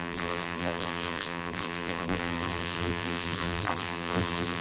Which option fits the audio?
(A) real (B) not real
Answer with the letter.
B